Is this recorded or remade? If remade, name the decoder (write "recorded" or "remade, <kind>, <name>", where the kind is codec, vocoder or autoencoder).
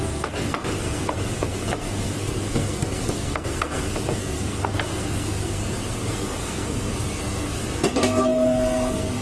remade, codec, SNAC